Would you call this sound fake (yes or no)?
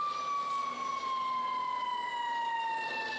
no